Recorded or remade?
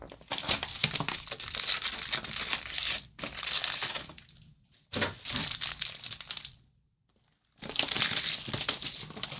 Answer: recorded